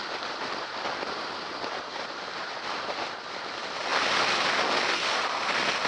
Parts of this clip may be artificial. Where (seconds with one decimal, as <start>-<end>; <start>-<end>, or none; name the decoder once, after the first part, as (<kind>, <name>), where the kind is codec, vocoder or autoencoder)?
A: 0.0-3.5 (vocoder, BigVGAN v2)